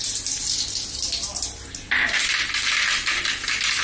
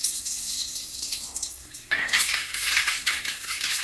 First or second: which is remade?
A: second